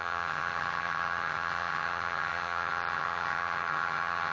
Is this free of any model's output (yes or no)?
no